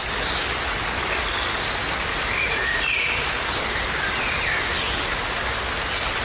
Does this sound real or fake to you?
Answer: real